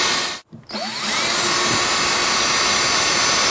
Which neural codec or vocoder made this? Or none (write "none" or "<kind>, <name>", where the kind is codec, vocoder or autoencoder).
none